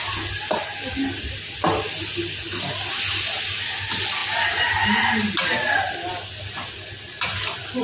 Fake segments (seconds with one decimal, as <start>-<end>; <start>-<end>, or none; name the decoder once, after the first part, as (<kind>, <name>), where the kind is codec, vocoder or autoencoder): none